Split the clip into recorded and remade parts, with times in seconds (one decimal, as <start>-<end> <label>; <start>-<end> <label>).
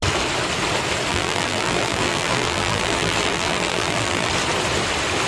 0.0-1.1 recorded; 1.1-4.3 remade; 4.3-5.3 recorded